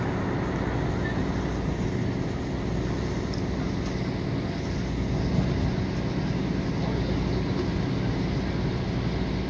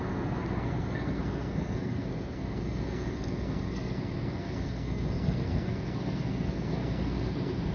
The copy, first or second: second